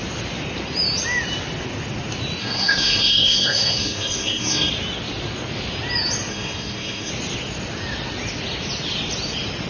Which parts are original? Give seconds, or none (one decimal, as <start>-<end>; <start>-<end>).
0.0-2.4; 4.7-6.3; 7.1-9.7